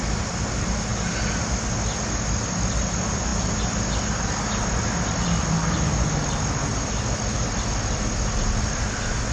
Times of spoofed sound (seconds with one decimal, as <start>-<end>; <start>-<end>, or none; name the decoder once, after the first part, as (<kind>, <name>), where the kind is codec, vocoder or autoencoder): none